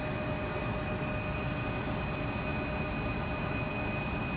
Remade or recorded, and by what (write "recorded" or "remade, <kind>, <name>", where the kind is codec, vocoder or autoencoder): recorded